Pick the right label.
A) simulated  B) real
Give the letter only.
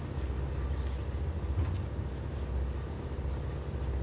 B